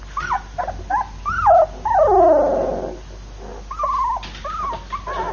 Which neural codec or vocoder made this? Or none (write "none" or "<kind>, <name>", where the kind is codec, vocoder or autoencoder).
none